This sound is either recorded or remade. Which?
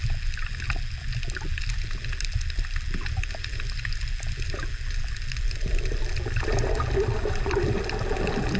recorded